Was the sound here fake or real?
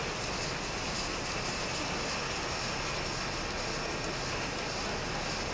real